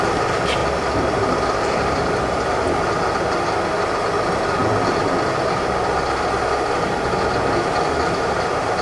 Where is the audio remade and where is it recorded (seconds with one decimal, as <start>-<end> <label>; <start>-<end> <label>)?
0.0-0.6 recorded; 0.6-2.5 remade; 2.5-8.8 recorded